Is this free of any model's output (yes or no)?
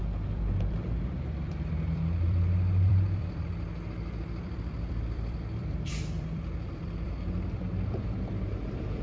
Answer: no